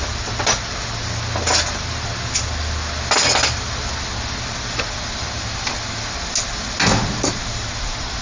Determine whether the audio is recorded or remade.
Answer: recorded